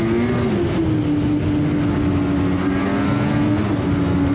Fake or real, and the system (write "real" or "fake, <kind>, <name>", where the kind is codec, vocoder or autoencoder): real